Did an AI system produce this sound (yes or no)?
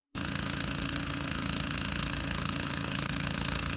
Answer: yes